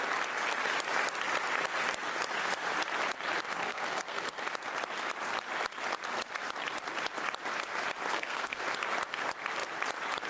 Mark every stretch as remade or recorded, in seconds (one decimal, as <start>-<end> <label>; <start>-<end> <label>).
0.0-3.6 recorded; 3.6-4.4 remade; 4.4-8.1 recorded; 8.1-8.6 remade; 8.6-10.3 recorded